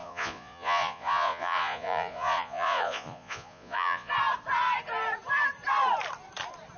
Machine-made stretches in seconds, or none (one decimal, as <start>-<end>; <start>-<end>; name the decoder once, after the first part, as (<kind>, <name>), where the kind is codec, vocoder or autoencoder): 0.0-4.1 (vocoder, Vocos)